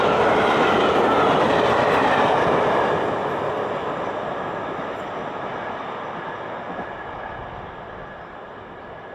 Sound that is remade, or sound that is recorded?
recorded